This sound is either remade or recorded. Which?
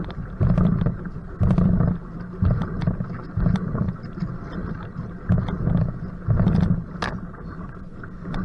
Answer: recorded